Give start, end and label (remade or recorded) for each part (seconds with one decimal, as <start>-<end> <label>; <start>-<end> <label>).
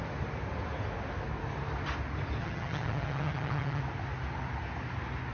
0.0-2.4 recorded; 2.4-3.8 remade; 3.8-5.3 recorded